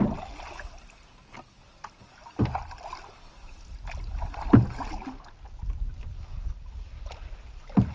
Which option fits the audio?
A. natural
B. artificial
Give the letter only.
A